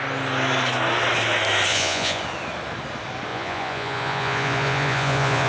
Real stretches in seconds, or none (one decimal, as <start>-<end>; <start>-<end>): 0.0-1.7; 2.2-3.3